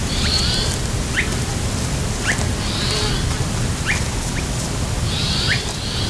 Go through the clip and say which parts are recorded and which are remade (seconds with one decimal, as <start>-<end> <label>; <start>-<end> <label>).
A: 0.0-6.1 recorded